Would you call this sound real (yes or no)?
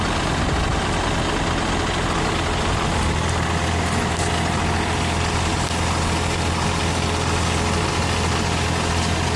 yes